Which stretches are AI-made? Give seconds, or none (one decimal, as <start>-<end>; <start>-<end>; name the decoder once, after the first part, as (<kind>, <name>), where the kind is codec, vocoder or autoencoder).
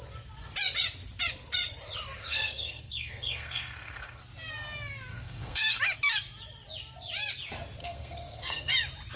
2.2-4.2 (codec, SNAC); 5.1-5.8; 7.8-8.7